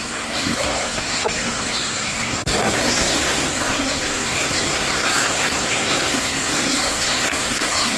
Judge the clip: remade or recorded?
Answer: remade